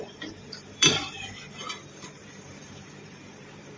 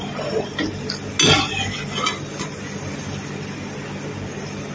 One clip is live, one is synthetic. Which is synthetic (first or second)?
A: first